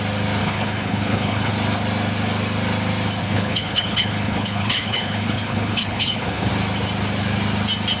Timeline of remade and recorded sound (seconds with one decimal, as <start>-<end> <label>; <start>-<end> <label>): 0.0-0.4 recorded; 0.4-1.5 remade; 1.5-3.2 recorded; 3.2-6.5 remade; 6.5-8.0 recorded